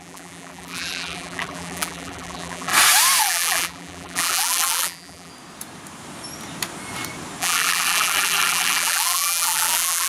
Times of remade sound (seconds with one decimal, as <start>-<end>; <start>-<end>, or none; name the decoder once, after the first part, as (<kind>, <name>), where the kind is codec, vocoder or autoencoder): 0.0-2.7 (vocoder, BigVGAN v2); 3.2-5.3; 7.4-10.1